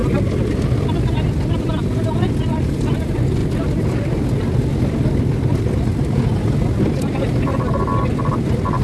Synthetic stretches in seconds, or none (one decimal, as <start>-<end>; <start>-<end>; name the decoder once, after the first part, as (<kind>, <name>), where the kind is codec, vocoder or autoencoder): none